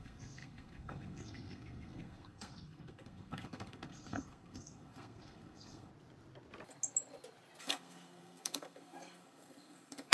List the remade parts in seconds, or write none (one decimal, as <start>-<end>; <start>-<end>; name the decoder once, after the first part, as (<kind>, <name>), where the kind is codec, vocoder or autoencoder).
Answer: 0.0-5.9 (codec, SNAC); 7.6-10.1